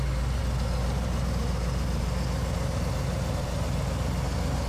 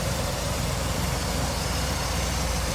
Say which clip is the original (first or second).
first